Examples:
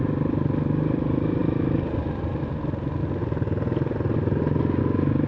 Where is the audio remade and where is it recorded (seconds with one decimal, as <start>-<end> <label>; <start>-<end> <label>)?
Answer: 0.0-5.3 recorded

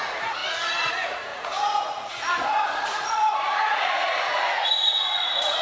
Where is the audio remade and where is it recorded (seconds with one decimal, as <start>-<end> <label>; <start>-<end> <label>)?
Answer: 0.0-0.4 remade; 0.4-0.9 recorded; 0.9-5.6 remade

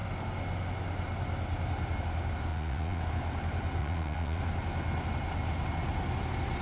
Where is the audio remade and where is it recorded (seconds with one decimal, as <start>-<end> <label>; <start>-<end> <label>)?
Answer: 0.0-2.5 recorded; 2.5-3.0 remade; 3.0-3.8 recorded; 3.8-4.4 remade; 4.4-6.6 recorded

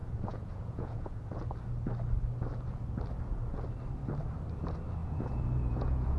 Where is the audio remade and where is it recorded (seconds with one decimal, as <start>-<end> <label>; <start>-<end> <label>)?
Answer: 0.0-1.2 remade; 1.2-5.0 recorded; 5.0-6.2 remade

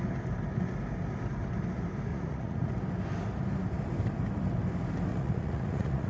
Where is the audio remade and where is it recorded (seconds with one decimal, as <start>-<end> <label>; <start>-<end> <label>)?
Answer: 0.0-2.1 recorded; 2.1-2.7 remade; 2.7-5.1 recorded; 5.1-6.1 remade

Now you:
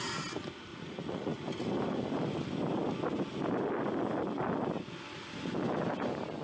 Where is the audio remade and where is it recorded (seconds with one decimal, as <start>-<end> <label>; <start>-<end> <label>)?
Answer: 0.0-0.7 recorded; 0.7-1.4 remade; 1.4-6.4 recorded

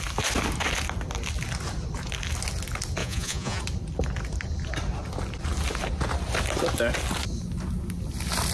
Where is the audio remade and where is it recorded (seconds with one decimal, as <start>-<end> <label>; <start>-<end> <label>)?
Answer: 0.0-3.0 recorded; 3.0-3.6 remade; 3.6-8.5 recorded